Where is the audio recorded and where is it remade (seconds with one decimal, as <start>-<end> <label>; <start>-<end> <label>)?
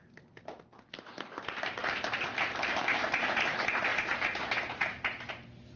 0.0-3.9 recorded; 3.9-4.4 remade; 4.4-5.8 recorded